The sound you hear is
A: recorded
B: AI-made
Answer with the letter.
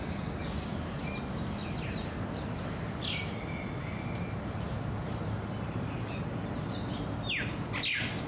A